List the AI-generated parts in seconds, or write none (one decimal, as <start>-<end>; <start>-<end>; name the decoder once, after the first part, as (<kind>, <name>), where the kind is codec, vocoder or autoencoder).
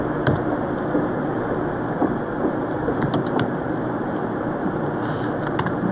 2.0-5.0 (vocoder, BigVGAN v2)